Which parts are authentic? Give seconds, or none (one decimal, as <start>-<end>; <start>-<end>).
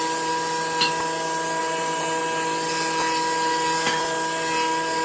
0.0-1.6; 2.2-5.0